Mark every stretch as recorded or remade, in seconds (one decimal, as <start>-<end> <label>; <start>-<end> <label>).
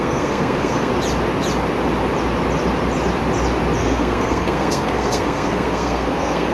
0.0-0.9 remade; 0.9-3.8 recorded; 3.8-6.5 remade